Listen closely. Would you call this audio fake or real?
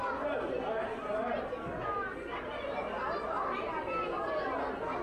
real